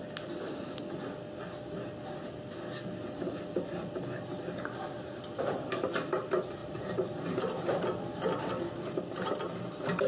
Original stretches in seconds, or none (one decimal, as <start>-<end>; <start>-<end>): 0.0-10.1